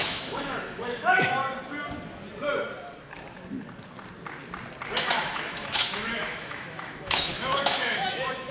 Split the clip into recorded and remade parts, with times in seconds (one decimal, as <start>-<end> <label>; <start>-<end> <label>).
0.0-1.4 remade; 1.4-5.0 recorded; 5.0-8.5 remade